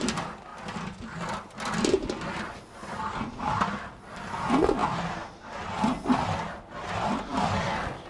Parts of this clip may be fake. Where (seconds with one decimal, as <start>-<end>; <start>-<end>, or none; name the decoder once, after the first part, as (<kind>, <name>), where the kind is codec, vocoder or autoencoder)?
none